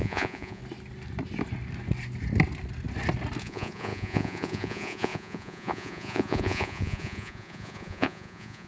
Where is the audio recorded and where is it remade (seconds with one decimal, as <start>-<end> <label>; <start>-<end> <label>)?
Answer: 0.0-0.6 remade; 0.6-3.4 recorded; 3.4-8.7 remade